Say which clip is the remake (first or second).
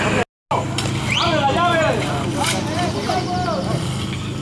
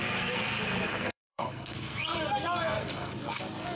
second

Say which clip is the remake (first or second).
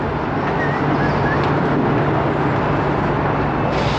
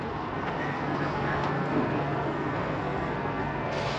second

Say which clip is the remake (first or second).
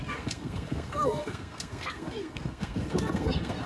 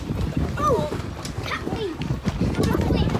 first